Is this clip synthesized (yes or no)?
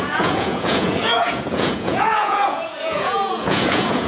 yes